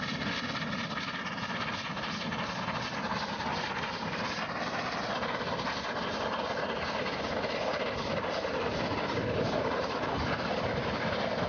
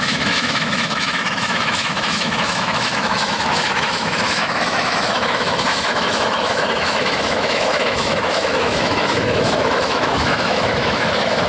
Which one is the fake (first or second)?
second